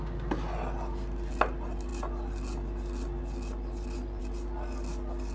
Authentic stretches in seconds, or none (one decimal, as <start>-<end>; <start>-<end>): 0.0-5.3